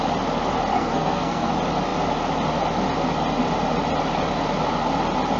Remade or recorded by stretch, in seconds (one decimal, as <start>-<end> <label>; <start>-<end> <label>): 0.0-0.7 recorded; 0.7-1.5 remade; 1.5-5.4 recorded